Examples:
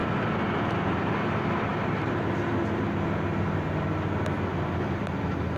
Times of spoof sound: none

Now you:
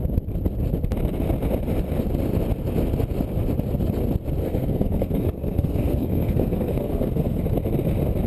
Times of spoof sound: 4.4-7.4 (codec, SNAC)

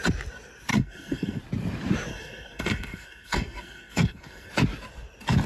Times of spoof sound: 0.7-1.4 (codec, SNAC); 2.1-4.5

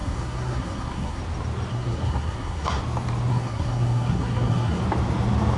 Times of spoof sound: 0.0-1.2 (codec, SNAC); 1.7-2.8; 3.3-4.8

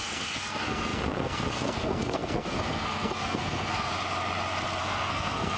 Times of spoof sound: 0.0-3.9 (codec, SNAC); 4.8-5.6

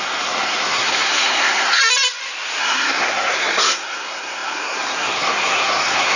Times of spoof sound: 0.0-1.8 (codec, SNAC); 2.6-6.2

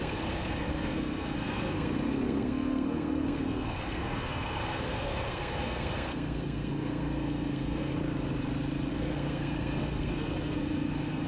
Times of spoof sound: 0.0-7.9 (codec, SNAC); 8.9-11.3

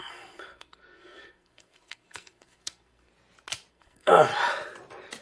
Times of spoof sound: 0.0-3.1 (codec, SNAC); 3.7-4.3